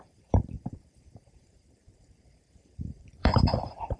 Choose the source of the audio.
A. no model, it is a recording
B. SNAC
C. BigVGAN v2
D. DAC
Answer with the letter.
C